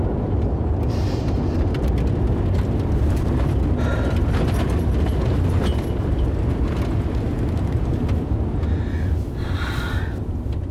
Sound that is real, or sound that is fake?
real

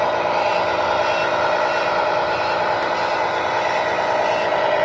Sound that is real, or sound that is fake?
real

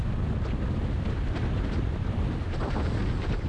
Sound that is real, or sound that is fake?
real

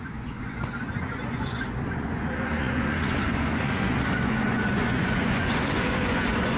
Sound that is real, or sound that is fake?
fake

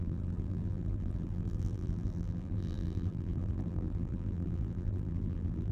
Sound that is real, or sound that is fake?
fake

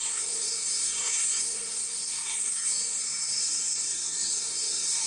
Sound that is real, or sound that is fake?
fake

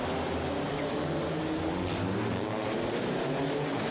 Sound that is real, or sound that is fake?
real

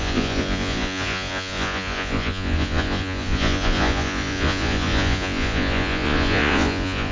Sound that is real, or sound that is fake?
fake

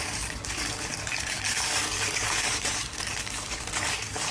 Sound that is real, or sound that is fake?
fake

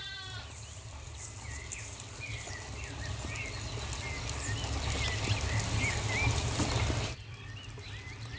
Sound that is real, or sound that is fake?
real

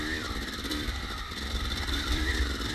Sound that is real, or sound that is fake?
fake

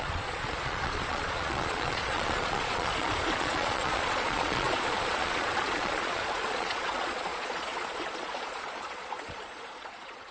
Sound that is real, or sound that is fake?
fake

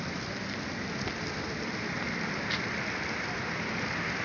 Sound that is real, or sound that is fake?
real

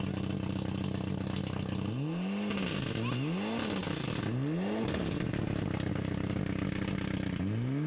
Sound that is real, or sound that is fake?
real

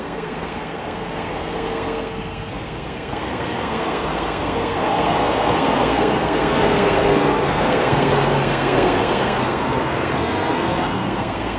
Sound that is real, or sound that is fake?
fake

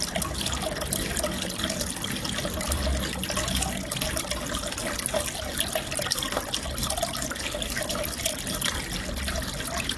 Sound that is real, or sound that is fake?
real